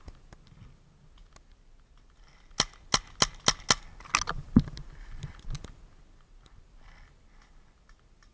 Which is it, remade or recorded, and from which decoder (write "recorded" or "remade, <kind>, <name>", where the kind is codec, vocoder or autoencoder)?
recorded